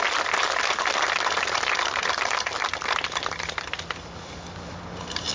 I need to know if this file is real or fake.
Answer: real